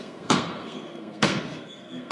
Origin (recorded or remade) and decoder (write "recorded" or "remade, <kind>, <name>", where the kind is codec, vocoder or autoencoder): remade, codec, SNAC